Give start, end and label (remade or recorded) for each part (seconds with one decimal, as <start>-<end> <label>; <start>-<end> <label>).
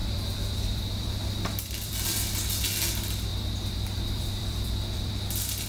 0.0-2.6 remade; 2.6-3.3 recorded; 3.3-5.1 remade; 5.1-5.7 recorded